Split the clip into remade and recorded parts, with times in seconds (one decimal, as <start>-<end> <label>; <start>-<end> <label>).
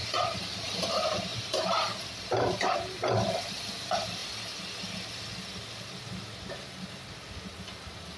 0.0-0.8 recorded; 0.8-4.2 remade; 4.2-7.7 recorded; 7.7-8.2 remade